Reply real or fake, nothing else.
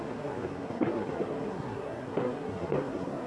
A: fake